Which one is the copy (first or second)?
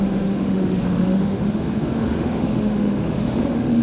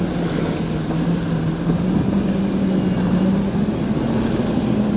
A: first